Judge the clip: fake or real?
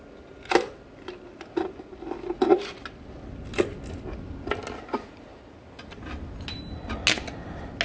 real